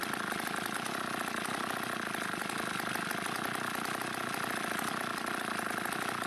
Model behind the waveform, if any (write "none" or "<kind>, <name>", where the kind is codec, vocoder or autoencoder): none